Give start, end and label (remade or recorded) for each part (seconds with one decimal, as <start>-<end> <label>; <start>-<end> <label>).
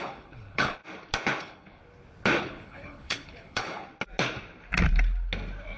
0.0-0.8 remade; 0.8-1.4 recorded; 1.4-1.8 remade; 1.8-2.4 recorded; 2.4-3.9 remade; 3.9-5.8 recorded